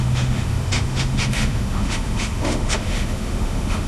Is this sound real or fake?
fake